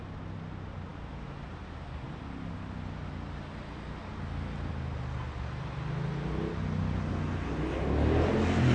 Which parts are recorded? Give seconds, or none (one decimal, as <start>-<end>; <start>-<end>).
0.0-8.7